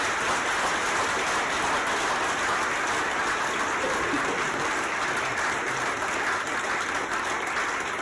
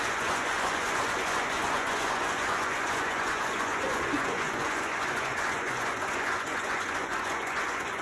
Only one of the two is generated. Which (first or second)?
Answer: second